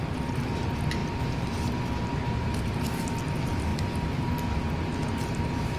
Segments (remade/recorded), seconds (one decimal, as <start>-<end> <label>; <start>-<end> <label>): 0.0-5.8 recorded